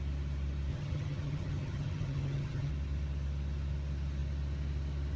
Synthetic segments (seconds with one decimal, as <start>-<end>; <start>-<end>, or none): 0.7-2.7